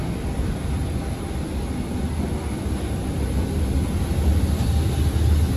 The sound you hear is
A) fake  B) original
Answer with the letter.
B